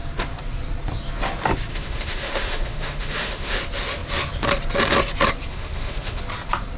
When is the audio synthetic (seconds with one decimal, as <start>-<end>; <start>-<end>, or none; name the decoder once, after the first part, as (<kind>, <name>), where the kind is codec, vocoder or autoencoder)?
1.7-3.6 (autoencoder, DAC-VAE); 5.5-6.2